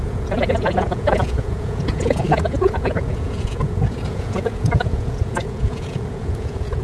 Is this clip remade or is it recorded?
remade